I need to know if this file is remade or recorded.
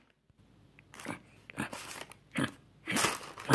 recorded